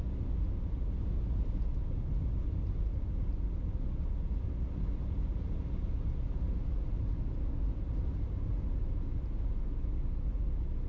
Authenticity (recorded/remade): recorded